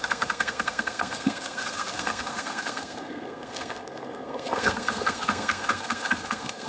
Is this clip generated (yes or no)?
yes